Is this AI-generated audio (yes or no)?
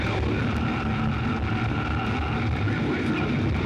yes